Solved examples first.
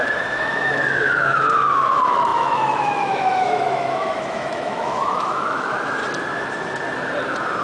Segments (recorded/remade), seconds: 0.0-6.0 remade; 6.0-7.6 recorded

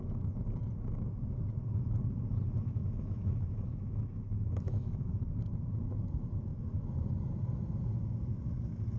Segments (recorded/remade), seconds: 0.0-2.8 recorded; 2.8-5.2 remade; 5.2-9.0 recorded

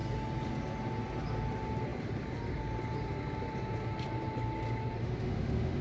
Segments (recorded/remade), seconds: 0.0-5.0 recorded; 5.0-5.8 remade

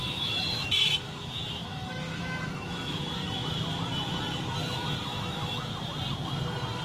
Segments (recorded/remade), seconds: 0.0-3.0 remade; 3.0-5.1 recorded; 5.1-5.7 remade; 5.7-6.8 recorded

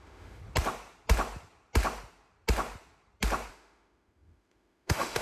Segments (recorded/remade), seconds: 0.0-0.4 remade; 0.4-3.5 recorded; 3.5-5.2 remade

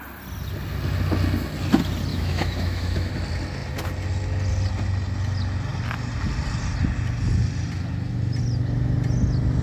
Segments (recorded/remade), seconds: 0.0-2.1 recorded; 2.1-3.1 remade; 3.1-9.6 recorded

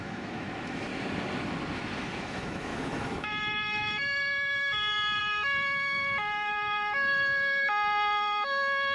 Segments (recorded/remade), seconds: 0.0-0.9 remade; 0.9-2.2 recorded; 2.2-8.9 remade

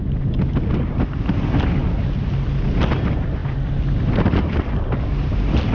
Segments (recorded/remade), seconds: 0.0-5.7 recorded